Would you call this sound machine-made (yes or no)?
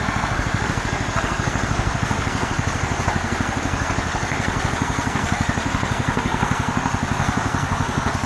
yes